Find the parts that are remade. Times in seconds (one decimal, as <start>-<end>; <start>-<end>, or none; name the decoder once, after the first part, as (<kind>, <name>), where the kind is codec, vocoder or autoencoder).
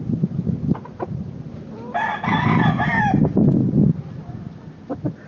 0.0-0.6 (vocoder, BigVGAN v2); 3.0-3.6